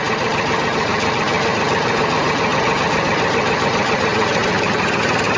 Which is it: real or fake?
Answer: real